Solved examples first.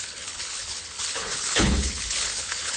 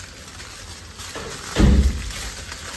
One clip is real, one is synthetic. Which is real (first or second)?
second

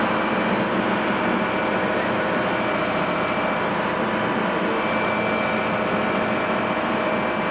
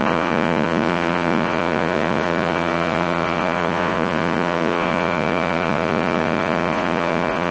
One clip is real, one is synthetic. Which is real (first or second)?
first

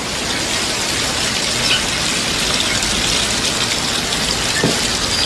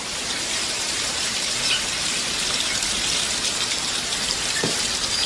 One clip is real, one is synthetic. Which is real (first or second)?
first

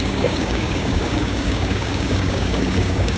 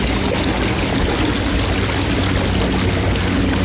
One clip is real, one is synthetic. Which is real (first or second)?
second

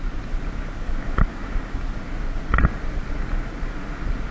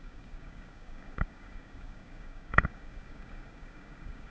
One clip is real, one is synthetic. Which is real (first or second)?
first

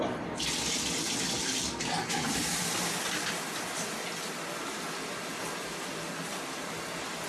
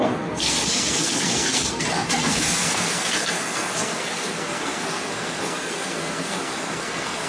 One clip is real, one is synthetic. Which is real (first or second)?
first